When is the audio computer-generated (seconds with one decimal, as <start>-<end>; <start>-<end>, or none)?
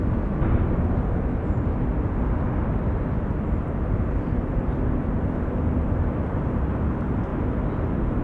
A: none